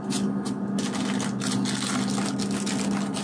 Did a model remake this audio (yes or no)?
no